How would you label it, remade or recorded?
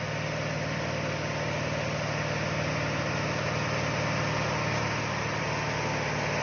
recorded